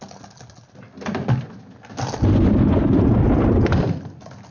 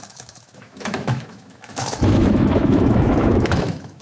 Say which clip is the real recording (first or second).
first